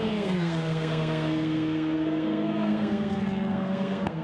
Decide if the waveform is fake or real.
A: fake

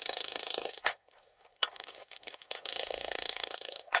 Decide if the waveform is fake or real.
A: fake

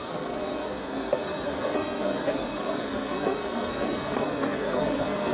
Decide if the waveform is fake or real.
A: fake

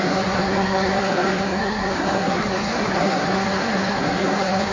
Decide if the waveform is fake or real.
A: fake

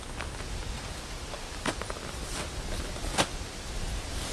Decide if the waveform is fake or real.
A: real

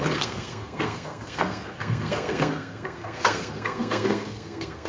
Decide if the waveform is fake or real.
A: fake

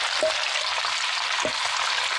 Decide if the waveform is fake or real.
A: real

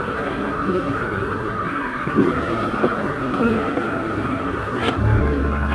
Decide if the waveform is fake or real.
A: fake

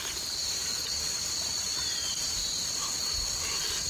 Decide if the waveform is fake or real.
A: real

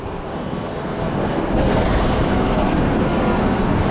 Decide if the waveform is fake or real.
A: fake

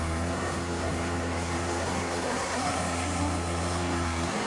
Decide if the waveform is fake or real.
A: fake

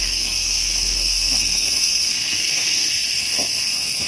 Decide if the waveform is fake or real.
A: fake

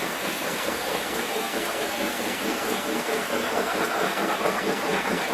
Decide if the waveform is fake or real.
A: fake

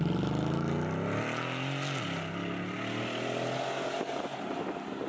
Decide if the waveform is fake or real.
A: real